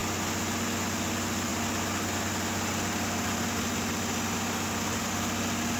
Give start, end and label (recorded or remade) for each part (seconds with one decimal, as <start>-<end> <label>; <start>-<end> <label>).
0.0-5.8 recorded